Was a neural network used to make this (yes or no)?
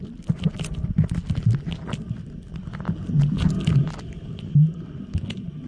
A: no